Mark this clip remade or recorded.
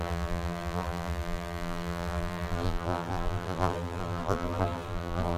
remade